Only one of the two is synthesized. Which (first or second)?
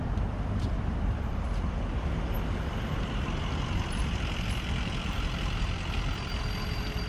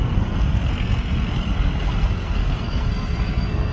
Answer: second